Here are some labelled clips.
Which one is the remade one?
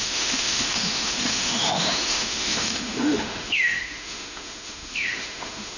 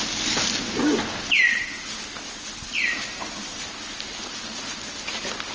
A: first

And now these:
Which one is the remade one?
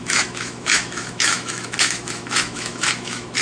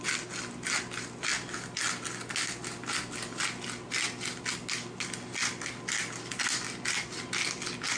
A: first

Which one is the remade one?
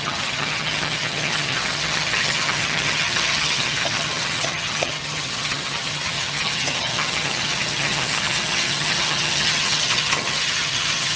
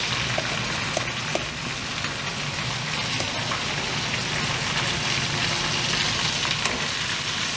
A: first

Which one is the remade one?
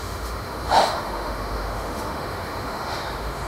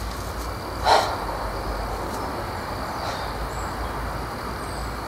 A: first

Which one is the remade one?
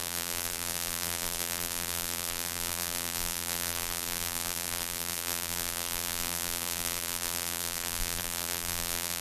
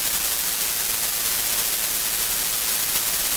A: first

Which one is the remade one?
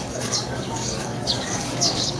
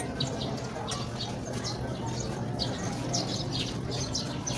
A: first